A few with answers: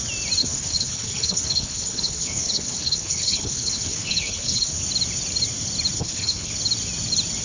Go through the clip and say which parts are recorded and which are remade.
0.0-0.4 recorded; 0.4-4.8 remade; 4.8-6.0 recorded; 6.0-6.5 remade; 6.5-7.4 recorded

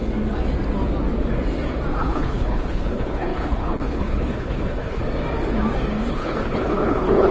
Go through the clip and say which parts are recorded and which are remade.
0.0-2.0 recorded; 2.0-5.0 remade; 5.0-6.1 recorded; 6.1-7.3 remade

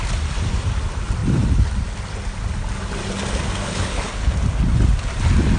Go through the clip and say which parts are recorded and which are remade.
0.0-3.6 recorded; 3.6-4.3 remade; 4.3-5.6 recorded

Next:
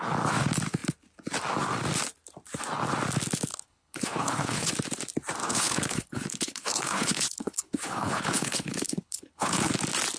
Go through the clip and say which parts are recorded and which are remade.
0.0-3.5 recorded; 3.5-4.7 remade; 4.7-5.4 recorded; 5.4-9.7 remade; 9.7-10.2 recorded

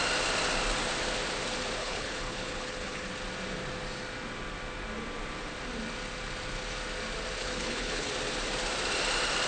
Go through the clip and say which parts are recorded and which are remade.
0.0-1.8 recorded; 1.8-3.1 remade; 3.1-7.4 recorded; 7.4-8.1 remade; 8.1-9.5 recorded